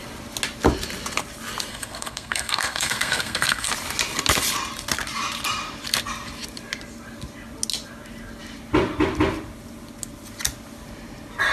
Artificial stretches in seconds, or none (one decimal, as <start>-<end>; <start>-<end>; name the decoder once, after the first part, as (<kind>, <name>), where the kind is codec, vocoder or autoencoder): 1.7-3.7 (codec, SNAC)